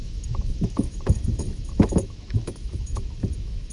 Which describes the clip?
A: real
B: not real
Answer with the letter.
B